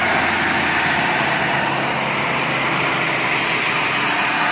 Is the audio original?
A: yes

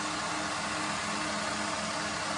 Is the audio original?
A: yes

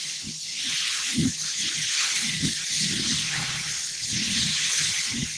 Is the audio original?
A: no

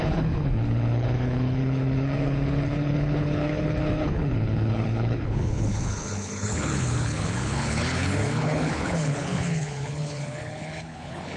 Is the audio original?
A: no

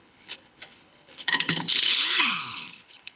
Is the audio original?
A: no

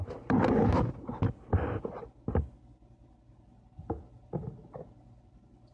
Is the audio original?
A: yes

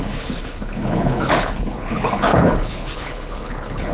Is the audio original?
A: no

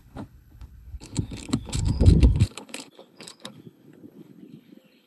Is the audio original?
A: no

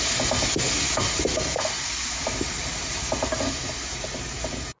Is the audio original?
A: yes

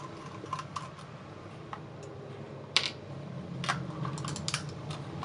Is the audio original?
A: yes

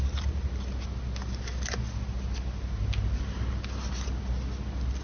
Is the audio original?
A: yes